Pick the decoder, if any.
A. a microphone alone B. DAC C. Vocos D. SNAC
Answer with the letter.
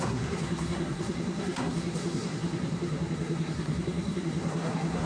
D